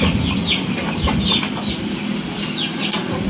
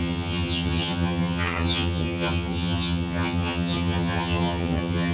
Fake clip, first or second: second